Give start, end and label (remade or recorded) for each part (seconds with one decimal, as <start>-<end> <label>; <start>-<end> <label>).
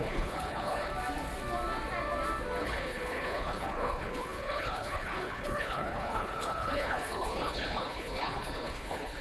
0.0-0.9 remade; 0.9-2.6 recorded; 2.6-9.2 remade